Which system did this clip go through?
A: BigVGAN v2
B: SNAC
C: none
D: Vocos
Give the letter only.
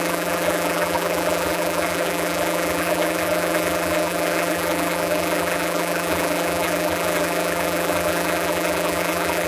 A